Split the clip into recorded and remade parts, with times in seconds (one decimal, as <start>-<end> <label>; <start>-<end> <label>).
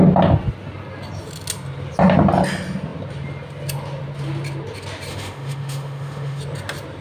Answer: 0.0-5.1 recorded; 5.1-6.4 remade; 6.4-7.0 recorded